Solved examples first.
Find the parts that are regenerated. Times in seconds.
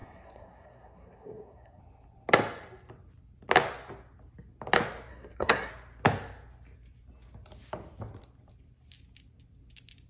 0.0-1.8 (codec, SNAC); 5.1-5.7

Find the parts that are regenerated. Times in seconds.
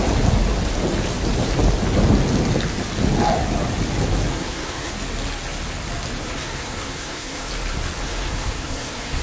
4.3-4.9 (codec, SNAC); 6.2-7.5; 8.0-9.2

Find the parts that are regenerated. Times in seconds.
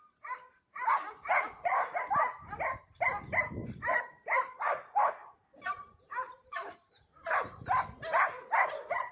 0.5-1.8 (vocoder, BigVGAN v2); 3.6-6.9